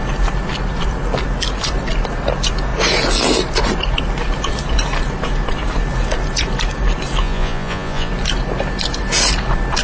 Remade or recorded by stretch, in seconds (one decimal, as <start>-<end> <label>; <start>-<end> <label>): 0.0-7.2 recorded; 7.2-8.1 remade; 8.1-9.8 recorded